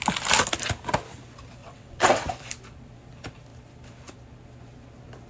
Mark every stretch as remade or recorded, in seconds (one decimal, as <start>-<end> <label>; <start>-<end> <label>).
0.0-1.6 recorded; 1.6-2.3 remade; 2.3-5.3 recorded